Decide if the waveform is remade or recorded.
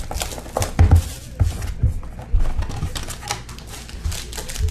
recorded